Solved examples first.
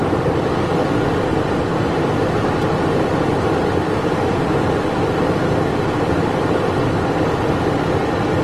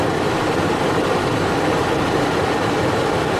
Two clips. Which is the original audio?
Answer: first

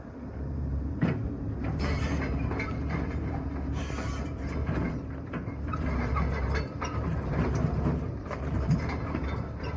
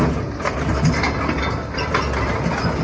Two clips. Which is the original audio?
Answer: second